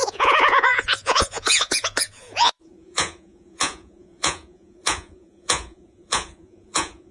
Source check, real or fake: fake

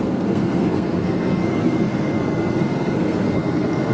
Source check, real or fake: fake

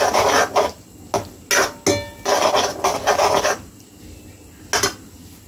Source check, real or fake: real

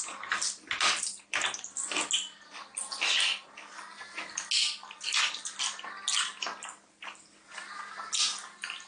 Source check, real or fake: real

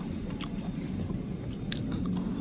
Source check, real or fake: real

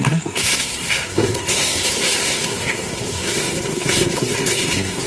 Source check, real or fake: fake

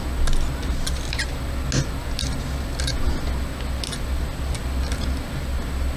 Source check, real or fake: real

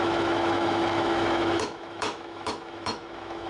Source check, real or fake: fake